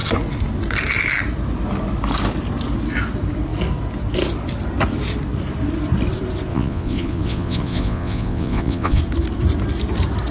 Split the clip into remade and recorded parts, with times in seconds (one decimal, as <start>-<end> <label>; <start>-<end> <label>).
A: 0.0-6.5 recorded; 6.5-9.0 remade; 9.0-10.3 recorded